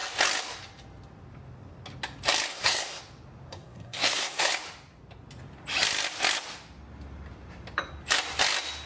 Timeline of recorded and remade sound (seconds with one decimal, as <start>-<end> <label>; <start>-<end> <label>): 0.0-2.5 recorded; 2.5-3.0 remade; 3.0-3.5 recorded; 3.5-4.5 remade; 4.5-8.9 recorded